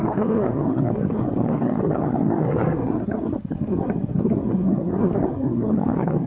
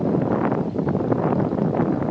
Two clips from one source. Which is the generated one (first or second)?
first